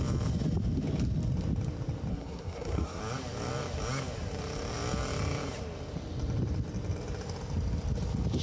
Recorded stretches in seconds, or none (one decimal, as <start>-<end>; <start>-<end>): 0.0-2.1; 3.0-8.4